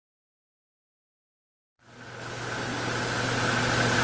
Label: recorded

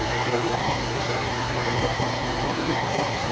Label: remade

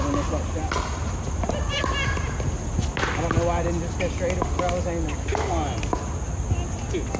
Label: recorded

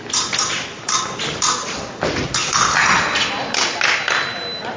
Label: recorded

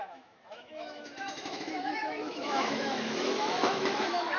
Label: remade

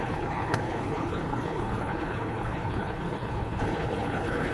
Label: remade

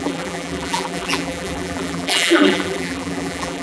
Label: remade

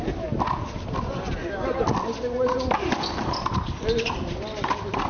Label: recorded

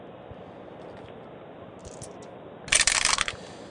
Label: recorded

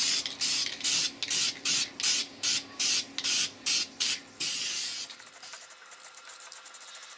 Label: recorded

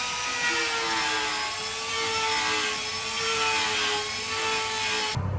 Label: recorded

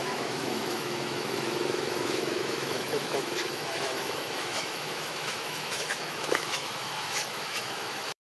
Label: remade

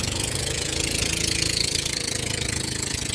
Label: remade